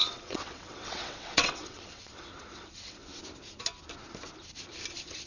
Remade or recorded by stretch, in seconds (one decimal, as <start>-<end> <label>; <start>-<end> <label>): 0.0-3.2 remade; 3.2-5.3 recorded

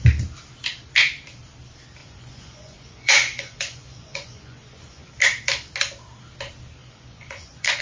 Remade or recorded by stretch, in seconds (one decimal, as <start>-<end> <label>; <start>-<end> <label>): 0.0-2.0 recorded; 2.0-5.1 remade; 5.1-6.8 recorded; 6.8-7.8 remade